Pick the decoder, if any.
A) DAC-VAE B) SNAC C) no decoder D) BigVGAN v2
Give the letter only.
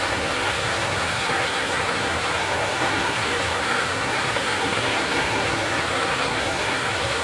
B